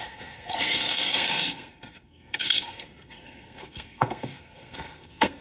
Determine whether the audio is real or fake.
fake